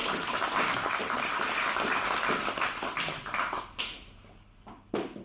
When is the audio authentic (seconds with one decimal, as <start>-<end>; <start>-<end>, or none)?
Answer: 0.0-5.2